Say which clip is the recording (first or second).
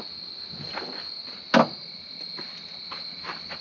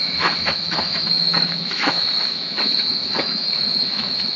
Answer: first